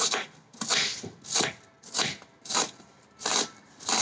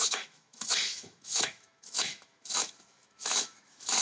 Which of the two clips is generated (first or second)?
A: second